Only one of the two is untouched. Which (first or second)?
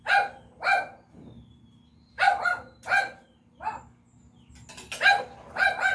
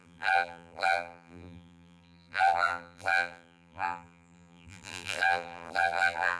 first